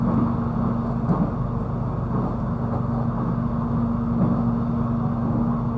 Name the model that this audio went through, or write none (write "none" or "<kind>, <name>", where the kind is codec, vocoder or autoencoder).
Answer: none